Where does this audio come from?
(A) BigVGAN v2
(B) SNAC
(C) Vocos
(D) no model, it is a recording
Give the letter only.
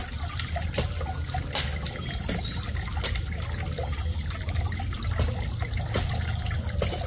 D